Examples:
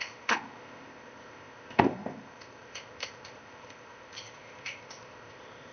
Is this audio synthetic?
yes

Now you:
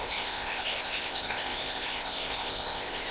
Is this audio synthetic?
yes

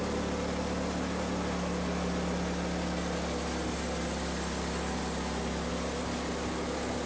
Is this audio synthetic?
no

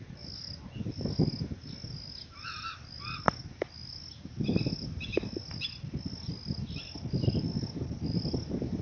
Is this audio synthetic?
no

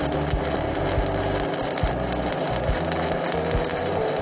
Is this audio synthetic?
no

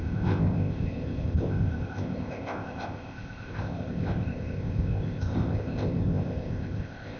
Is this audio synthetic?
yes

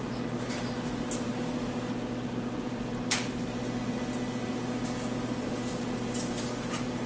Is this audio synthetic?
no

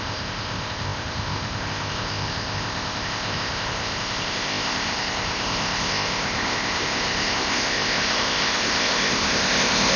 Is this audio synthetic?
yes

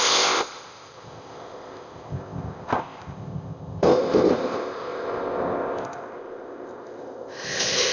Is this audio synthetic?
yes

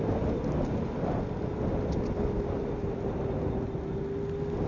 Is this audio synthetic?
no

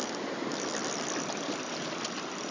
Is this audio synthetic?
no